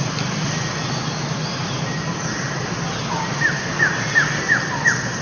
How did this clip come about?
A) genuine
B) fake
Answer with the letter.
A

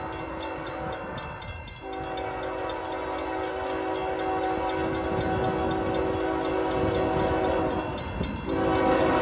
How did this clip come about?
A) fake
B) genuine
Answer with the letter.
B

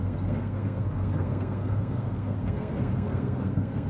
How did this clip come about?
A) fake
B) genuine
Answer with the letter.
A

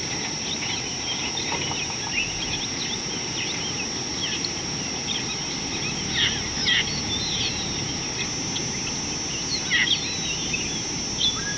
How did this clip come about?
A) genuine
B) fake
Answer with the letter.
A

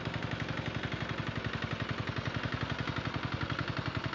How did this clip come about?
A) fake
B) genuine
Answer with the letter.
B